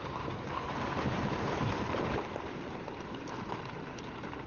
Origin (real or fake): fake